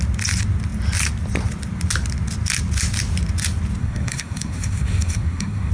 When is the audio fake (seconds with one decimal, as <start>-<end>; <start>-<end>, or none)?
3.8-5.7